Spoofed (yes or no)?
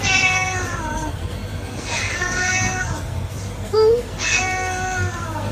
yes